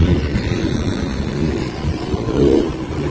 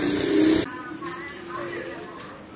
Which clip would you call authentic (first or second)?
second